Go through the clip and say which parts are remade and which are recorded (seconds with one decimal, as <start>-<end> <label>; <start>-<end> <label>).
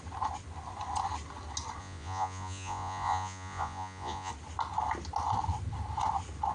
0.0-1.8 recorded; 1.8-4.3 remade; 4.3-6.5 recorded